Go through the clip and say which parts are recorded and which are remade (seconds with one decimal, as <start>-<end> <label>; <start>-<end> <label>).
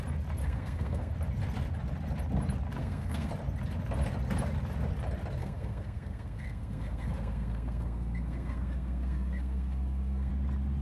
0.0-0.4 recorded; 0.4-1.1 remade; 1.1-2.8 recorded; 2.8-3.3 remade; 3.3-5.4 recorded; 5.4-10.3 remade; 10.3-10.8 recorded